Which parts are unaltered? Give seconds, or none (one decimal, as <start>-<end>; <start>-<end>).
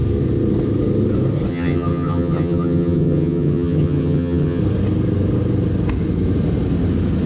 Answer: 0.0-1.5; 4.6-7.3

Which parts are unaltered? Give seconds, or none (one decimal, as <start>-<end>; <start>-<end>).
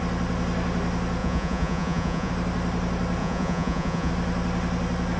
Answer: 0.0-1.2; 2.3-3.2; 4.1-5.2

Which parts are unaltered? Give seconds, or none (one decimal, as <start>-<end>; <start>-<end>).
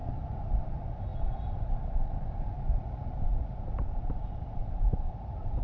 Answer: 0.0-0.6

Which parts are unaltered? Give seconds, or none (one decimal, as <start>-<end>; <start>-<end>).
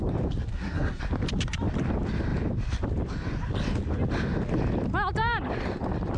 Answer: 0.0-0.5; 1.0-6.2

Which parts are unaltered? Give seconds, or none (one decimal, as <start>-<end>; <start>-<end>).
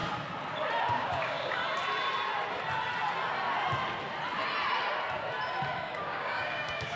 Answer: 0.0-0.8; 1.6-5.8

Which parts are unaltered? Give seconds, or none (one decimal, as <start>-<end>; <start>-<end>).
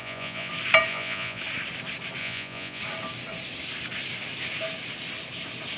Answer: 0.5-0.9; 1.4-2.2; 2.8-5.8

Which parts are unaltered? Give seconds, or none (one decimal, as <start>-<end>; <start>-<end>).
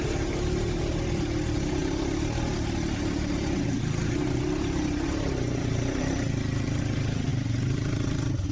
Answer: 0.0-8.5